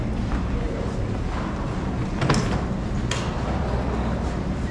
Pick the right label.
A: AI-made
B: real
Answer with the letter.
B